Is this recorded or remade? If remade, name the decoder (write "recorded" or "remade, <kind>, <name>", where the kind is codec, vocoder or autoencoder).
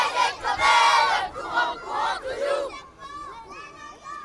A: recorded